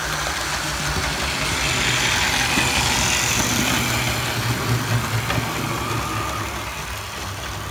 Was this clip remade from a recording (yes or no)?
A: no